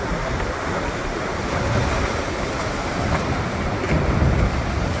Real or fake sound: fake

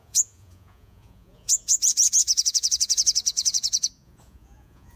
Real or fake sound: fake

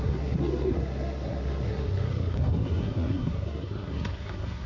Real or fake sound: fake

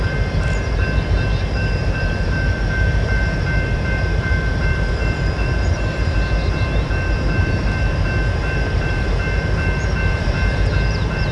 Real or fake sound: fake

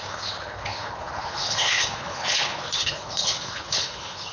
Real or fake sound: fake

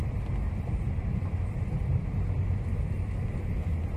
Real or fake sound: real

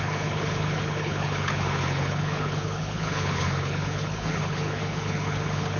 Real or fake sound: fake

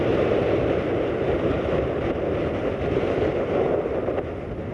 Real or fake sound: real